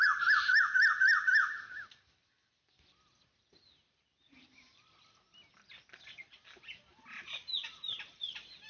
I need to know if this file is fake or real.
fake